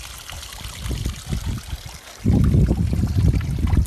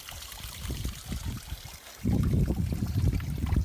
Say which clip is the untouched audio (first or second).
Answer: first